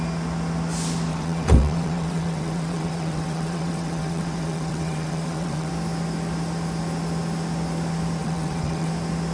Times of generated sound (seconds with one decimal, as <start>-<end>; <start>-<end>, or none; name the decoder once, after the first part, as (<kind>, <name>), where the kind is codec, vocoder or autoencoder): 1.1-5.7 (vocoder, WaveNeXt); 8.2-8.9